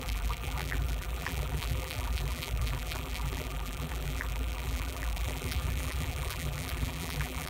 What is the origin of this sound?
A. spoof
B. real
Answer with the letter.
A